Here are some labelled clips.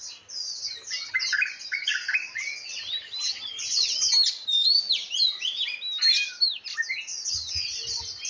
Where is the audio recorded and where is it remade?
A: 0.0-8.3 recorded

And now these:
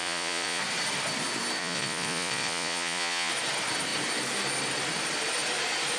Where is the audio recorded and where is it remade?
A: 0.0-0.6 remade; 0.6-1.6 recorded; 1.6-3.3 remade; 3.3-6.0 recorded